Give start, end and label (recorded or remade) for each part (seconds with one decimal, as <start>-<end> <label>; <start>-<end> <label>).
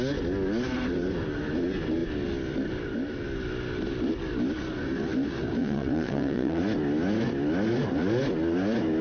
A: 0.0-5.6 recorded; 5.6-6.6 remade; 6.6-9.0 recorded